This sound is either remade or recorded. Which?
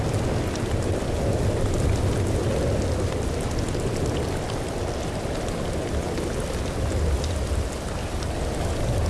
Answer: recorded